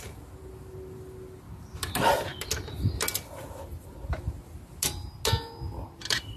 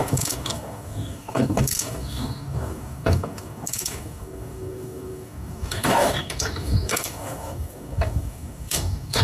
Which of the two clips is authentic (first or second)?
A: first